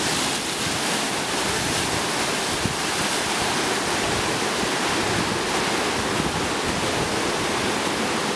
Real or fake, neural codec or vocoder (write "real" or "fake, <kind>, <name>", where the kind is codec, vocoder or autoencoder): real